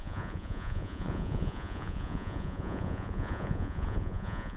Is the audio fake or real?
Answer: fake